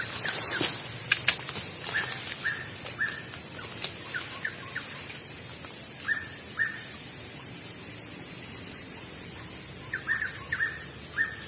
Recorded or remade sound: recorded